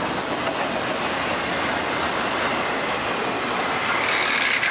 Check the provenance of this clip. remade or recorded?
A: recorded